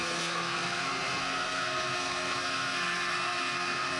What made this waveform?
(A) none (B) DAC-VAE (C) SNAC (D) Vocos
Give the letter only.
C